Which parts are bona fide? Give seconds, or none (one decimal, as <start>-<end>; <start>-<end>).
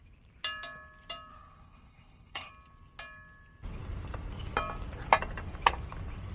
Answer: 0.0-1.3; 2.5-6.3